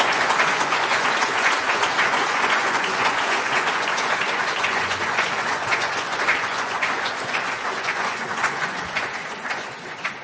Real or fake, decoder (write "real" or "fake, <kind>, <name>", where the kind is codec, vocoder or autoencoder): fake, vocoder, Vocos